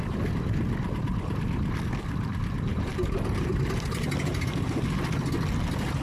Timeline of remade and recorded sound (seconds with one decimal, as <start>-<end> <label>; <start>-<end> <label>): 0.0-2.7 recorded; 2.7-3.6 remade; 3.6-4.3 recorded; 4.3-4.9 remade; 4.9-6.0 recorded